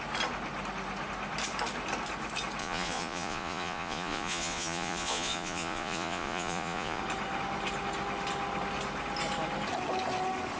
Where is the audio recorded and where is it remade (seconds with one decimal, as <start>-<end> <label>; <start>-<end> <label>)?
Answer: 0.0-2.6 recorded; 2.6-7.0 remade; 7.0-10.6 recorded